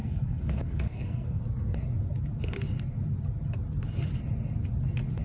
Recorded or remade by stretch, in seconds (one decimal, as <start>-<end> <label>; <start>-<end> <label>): 0.0-1.4 remade; 1.4-5.2 recorded